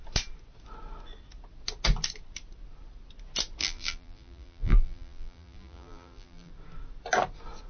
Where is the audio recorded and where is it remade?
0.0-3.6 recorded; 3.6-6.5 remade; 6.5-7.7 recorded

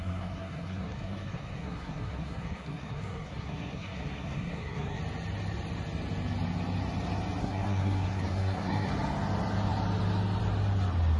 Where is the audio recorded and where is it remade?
0.0-5.0 remade; 5.0-7.4 recorded; 7.4-8.9 remade; 8.9-11.2 recorded

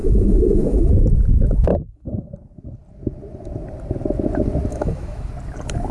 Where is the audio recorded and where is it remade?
0.0-0.9 remade; 0.9-1.7 recorded; 1.7-2.3 remade; 2.3-4.7 recorded; 4.7-5.3 remade; 5.3-5.9 recorded

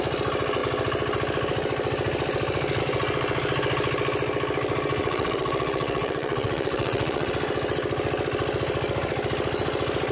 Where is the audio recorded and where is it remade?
0.0-5.0 recorded; 5.0-7.3 remade; 7.3-10.1 recorded

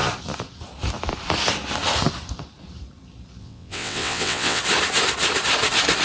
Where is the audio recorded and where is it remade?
0.0-3.4 recorded; 3.4-4.6 remade; 4.6-6.0 recorded

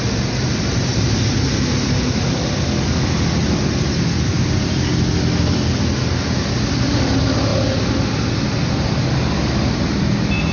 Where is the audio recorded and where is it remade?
0.0-10.5 recorded

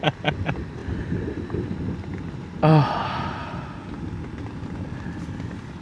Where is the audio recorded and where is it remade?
0.0-3.0 remade; 3.0-4.5 recorded; 4.5-5.8 remade

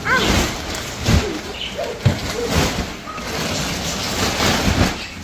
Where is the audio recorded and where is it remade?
0.0-5.2 recorded